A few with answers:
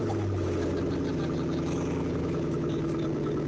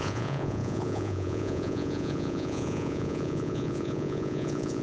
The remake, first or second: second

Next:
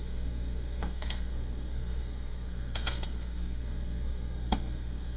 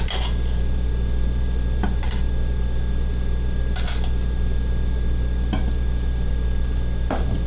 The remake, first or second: first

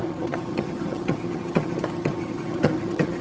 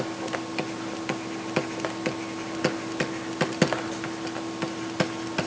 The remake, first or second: first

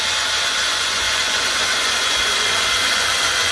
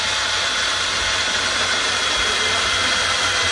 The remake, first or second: first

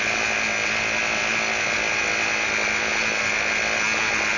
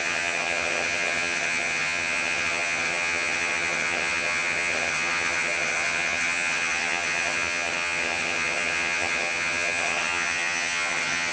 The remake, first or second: second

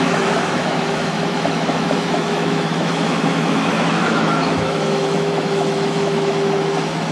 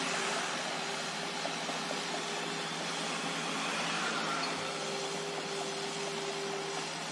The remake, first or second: first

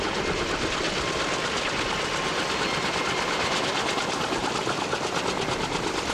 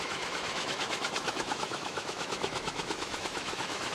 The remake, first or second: second